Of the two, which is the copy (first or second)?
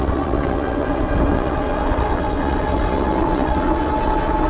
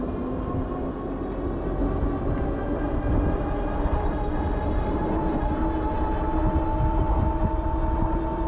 first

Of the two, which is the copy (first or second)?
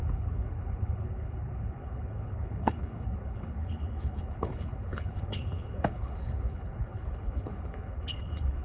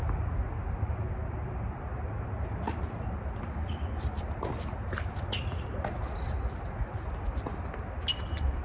first